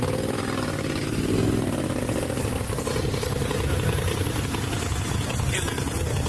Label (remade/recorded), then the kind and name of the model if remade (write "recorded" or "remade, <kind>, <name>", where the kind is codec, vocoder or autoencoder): recorded